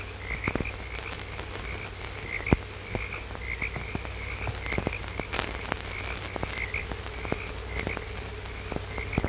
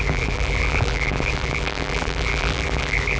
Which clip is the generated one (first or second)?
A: second